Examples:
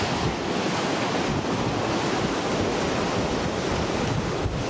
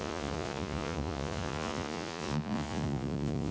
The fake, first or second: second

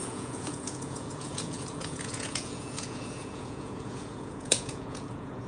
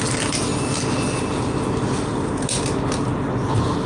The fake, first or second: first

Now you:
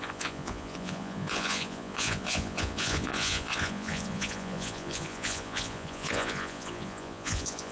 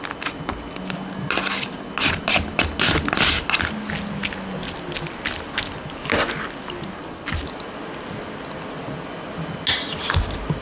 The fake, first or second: first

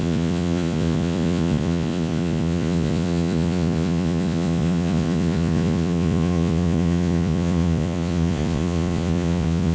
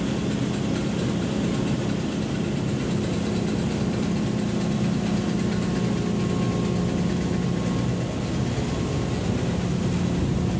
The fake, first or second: first